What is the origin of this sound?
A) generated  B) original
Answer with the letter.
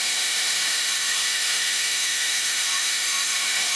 A